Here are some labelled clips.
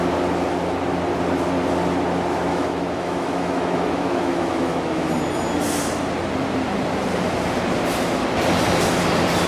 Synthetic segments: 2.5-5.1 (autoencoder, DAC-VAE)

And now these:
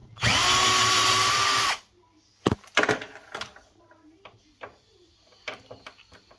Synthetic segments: 1.3-2.3 (vocoder, BigVGAN v2); 2.8-6.4

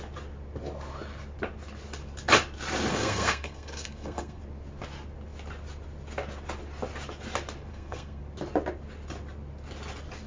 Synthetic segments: 2.9-4.4 (codec, SNAC); 7.7-8.2

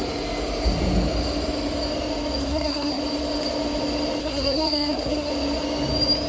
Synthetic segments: 2.4-3.0 (codec, SNAC); 4.2-5.3

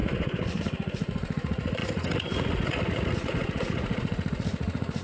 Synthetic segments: 0.0-5.0 (vocoder, Vocos)

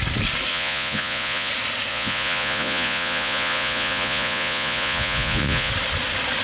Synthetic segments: 0.5-1.5 (vocoder, Vocos); 1.9-5.7